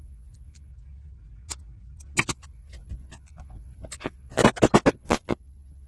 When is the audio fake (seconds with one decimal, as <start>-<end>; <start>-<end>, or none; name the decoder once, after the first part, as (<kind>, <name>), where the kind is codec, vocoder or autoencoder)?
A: 0.0-0.7 (vocoder, Vocos); 2.3-4.4; 4.9-5.9